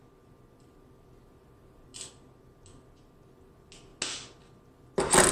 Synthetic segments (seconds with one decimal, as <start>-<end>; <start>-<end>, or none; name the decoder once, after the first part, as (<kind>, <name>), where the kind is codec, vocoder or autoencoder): none